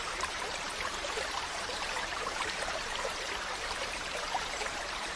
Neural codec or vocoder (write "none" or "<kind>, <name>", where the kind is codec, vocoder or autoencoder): vocoder, BigVGAN v2